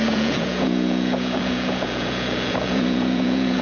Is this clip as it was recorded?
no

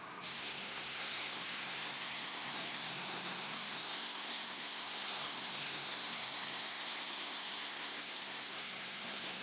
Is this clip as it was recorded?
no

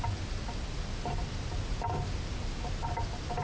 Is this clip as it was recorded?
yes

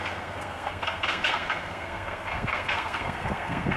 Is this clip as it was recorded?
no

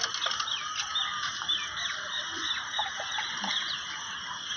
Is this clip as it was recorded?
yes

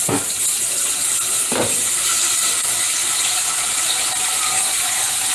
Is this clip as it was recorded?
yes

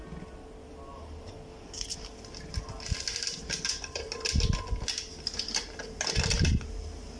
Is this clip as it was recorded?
yes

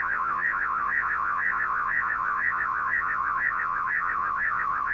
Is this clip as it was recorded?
no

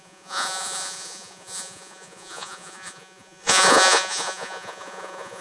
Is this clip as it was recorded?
no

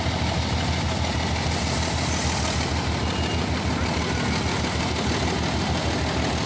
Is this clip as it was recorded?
yes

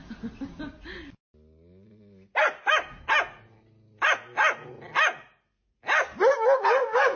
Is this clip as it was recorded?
yes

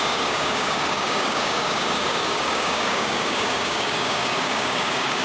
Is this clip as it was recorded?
no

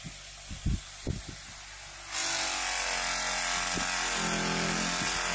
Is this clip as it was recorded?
yes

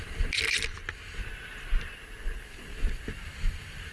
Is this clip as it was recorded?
yes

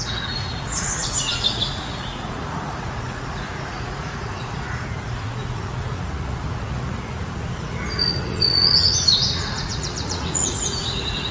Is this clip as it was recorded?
no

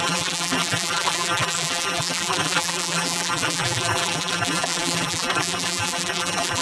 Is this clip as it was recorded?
no